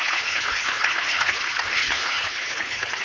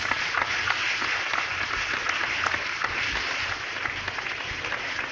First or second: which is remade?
first